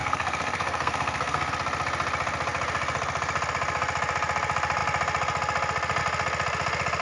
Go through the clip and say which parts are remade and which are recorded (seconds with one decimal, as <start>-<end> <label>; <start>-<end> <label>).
0.0-1.5 remade; 1.5-7.0 recorded